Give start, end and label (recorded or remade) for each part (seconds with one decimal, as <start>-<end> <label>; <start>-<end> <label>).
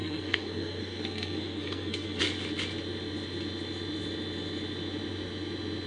0.0-2.2 remade; 2.2-5.9 recorded